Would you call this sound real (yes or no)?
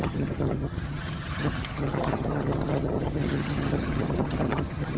no